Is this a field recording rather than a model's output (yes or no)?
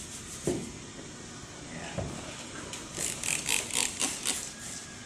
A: yes